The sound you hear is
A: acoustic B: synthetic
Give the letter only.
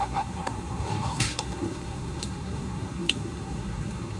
B